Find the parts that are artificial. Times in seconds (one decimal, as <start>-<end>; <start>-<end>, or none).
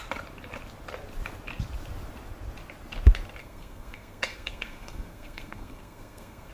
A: 3.4-6.5